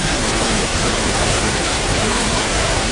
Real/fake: fake